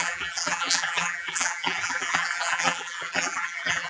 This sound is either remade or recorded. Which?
remade